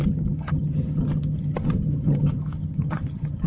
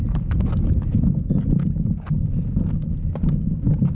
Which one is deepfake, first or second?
first